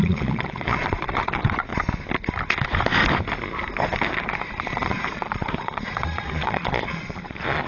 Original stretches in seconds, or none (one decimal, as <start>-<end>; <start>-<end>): 1.7-4.5